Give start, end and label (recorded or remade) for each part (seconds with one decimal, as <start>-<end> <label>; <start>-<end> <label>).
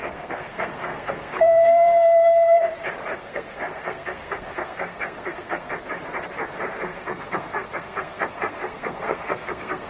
0.0-2.6 remade; 2.6-3.1 recorded; 3.1-5.7 remade; 5.7-6.9 recorded; 6.9-9.9 remade